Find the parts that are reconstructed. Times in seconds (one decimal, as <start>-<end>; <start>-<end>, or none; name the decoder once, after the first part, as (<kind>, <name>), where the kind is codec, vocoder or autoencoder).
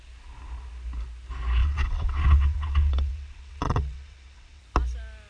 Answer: 1.6-4.6 (vocoder, WaveNeXt)